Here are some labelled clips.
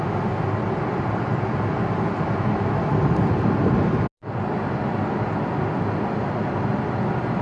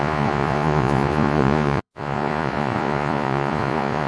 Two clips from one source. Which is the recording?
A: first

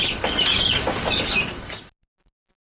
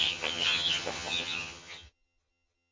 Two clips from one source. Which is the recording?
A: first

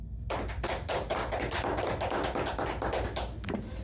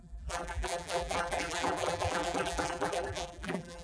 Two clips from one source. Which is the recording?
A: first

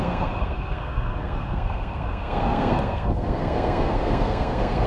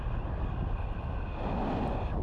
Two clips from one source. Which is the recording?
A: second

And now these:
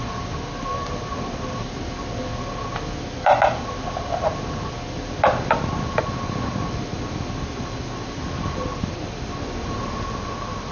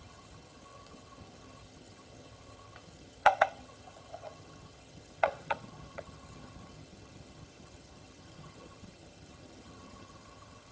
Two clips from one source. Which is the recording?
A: first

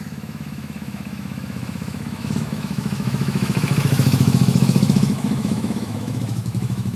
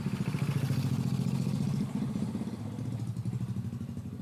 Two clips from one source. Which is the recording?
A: second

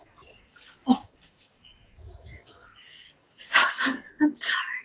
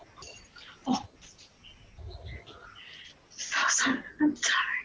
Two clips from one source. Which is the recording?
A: second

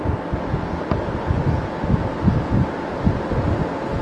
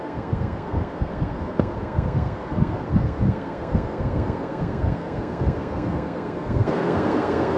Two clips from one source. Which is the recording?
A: first